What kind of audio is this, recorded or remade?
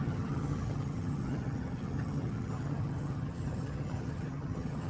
remade